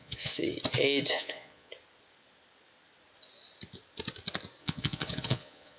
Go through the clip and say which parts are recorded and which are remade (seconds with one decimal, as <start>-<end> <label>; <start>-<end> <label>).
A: 0.0-0.4 remade; 0.4-1.1 recorded; 1.1-1.7 remade; 1.7-4.6 recorded; 4.6-5.8 remade